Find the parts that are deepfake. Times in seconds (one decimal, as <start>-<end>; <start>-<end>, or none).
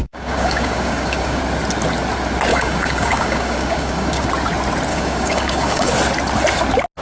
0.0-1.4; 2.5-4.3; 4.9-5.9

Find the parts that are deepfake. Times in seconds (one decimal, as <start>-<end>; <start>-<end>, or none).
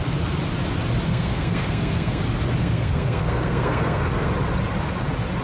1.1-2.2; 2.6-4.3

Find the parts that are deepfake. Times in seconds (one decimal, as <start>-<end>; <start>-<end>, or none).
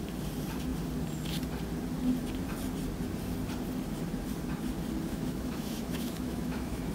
5.1-6.9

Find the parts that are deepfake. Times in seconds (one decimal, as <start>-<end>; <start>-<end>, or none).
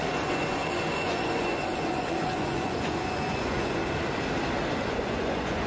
0.0-3.8; 4.7-5.7